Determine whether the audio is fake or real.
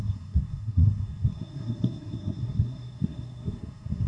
fake